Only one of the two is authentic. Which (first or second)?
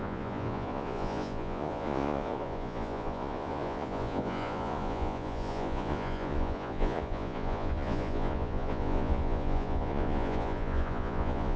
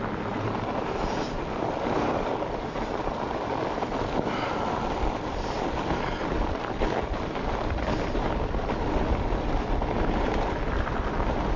second